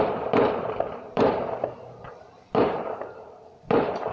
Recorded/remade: remade